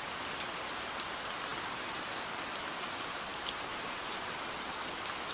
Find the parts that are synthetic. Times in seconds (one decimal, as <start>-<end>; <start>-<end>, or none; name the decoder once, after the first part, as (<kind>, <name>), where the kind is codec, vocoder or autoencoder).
none